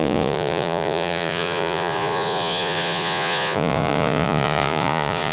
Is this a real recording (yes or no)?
no